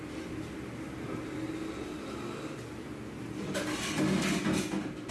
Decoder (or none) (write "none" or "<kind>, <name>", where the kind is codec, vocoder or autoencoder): none